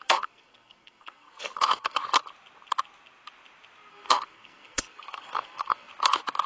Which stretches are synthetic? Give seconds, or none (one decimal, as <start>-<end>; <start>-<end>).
0.0-2.0; 3.9-5.9